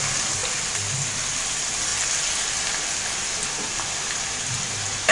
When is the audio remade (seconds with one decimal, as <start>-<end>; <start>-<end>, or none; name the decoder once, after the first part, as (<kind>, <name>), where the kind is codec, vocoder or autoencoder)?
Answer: none